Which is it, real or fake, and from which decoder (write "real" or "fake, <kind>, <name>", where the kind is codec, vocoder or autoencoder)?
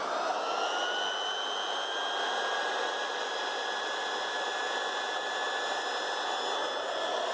real